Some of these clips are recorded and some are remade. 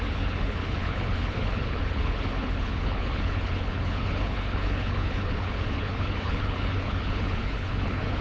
remade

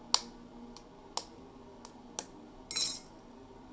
recorded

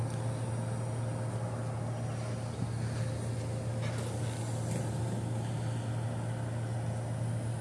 recorded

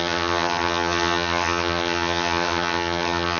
remade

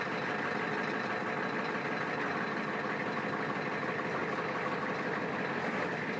recorded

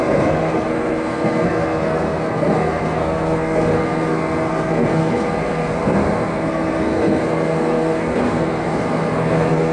remade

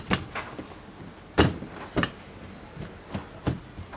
recorded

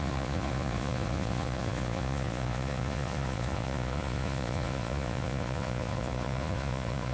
remade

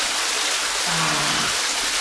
recorded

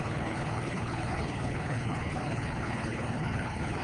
remade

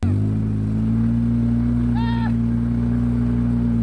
recorded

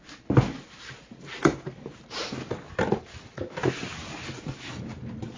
recorded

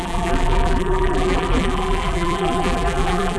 remade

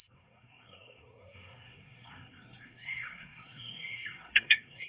remade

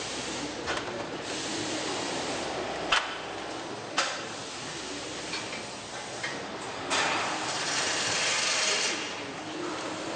recorded